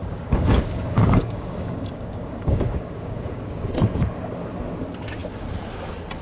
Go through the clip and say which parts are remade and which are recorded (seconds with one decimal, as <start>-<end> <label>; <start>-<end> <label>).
0.0-3.7 remade; 3.7-6.2 recorded